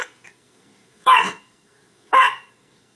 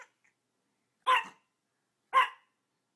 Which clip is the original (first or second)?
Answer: second